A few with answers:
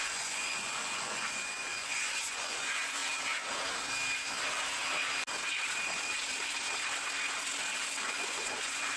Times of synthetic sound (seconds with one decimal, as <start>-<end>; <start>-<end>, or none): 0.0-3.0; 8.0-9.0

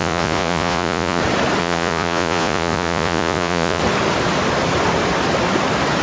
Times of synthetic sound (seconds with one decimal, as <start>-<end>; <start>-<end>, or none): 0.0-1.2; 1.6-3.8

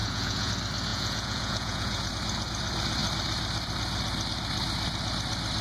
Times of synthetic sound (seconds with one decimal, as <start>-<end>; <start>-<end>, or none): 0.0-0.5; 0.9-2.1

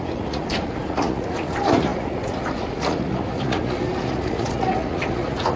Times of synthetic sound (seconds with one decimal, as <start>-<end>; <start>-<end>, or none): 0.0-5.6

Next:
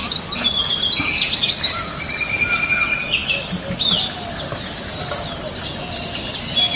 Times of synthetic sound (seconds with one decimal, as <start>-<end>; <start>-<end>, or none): none

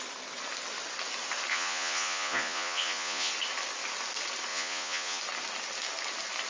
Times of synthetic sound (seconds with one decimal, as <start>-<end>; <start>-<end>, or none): 1.5-3.3; 4.5-5.2

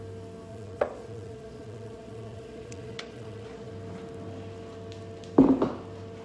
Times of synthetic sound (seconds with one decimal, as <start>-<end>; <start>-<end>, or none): 0.5-3.7